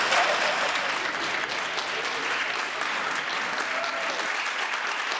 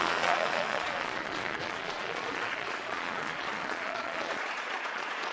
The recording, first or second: first